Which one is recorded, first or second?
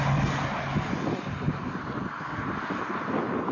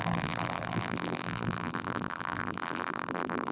first